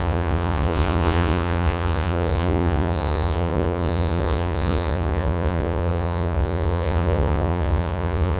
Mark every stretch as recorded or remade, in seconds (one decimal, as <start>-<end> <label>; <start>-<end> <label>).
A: 0.0-8.4 remade